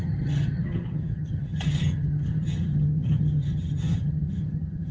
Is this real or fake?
fake